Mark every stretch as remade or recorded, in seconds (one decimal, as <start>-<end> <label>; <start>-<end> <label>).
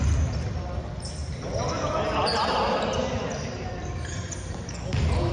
0.0-5.3 recorded